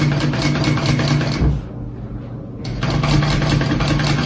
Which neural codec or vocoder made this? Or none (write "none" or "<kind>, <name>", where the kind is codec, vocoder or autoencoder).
none